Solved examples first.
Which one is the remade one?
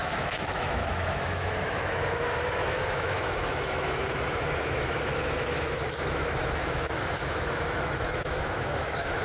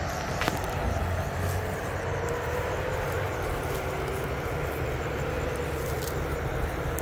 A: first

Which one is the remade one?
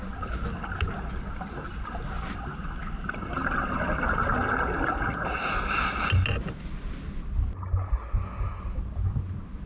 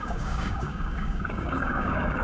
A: second